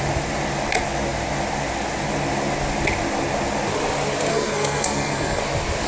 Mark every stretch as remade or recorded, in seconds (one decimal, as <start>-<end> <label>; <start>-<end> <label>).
0.0-4.3 recorded; 4.3-5.4 remade; 5.4-5.9 recorded